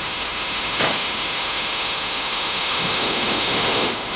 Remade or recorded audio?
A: remade